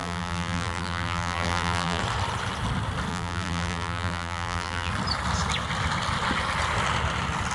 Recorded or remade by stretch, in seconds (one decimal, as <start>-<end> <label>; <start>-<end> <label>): 0.0-2.0 remade; 2.0-3.1 recorded; 3.1-4.9 remade; 4.9-7.5 recorded